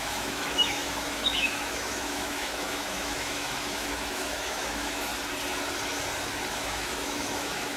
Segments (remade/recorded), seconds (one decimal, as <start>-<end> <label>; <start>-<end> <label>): 0.0-5.1 remade; 5.1-6.5 recorded; 6.5-7.8 remade